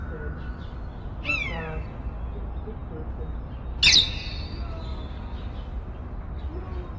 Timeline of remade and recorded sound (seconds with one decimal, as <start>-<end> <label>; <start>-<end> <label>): 0.0-7.0 recorded

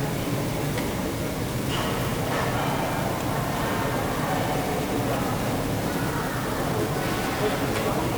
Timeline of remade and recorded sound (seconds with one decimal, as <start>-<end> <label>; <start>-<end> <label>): 0.0-8.2 recorded